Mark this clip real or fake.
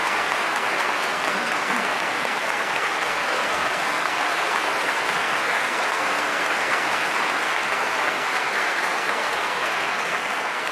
fake